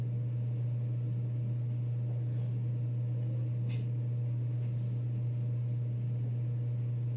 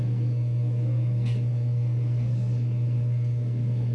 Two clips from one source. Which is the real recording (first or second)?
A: first